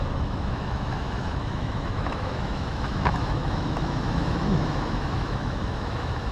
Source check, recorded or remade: remade